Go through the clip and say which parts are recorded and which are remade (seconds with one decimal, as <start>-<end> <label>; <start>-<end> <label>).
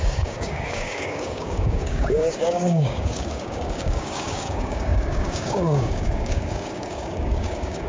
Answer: 0.0-7.9 remade